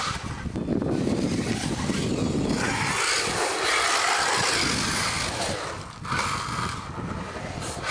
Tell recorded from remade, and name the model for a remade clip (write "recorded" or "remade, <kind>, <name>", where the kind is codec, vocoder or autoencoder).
recorded